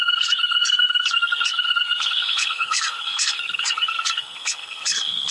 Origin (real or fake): fake